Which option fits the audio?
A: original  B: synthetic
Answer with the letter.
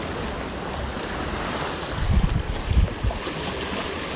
A